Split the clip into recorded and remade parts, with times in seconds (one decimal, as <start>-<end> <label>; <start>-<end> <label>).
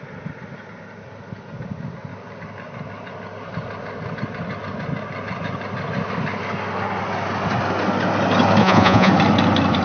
0.0-8.6 recorded; 8.6-9.1 remade; 9.1-9.8 recorded